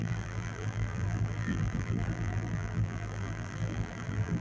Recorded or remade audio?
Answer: remade